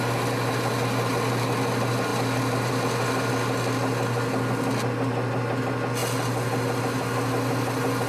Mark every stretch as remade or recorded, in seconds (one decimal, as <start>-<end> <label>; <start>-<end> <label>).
0.0-8.1 recorded